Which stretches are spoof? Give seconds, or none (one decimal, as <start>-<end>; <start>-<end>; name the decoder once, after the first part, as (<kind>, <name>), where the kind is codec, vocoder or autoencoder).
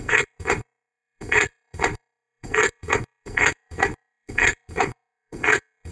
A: 0.0-5.9 (codec, SNAC)